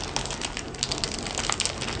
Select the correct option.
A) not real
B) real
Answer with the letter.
B